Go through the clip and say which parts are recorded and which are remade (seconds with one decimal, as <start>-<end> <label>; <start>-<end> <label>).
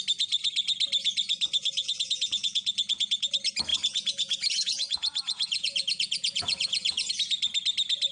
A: 0.0-1.8 recorded; 1.8-3.3 remade; 3.3-3.7 recorded; 3.7-7.1 remade; 7.1-8.1 recorded